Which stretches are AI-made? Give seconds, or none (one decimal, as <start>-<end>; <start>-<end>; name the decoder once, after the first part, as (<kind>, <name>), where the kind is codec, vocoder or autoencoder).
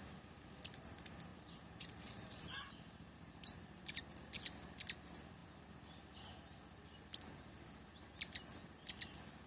1.3-4.0 (vocoder, BigVGAN v2)